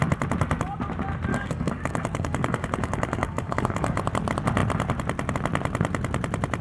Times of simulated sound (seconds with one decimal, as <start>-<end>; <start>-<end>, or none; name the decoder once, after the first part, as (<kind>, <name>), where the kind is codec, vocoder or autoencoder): 1.3-4.0 (codec, DAC)